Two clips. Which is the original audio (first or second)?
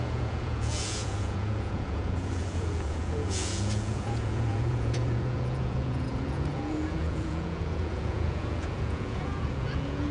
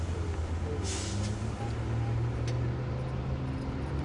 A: second